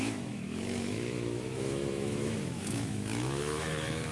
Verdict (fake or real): fake